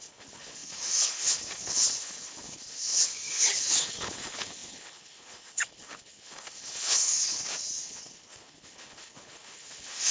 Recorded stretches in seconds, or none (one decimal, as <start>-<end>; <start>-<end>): none

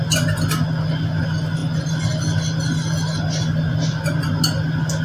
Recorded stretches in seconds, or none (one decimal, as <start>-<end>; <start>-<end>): 0.0-5.0